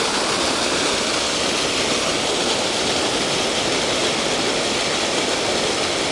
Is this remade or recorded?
recorded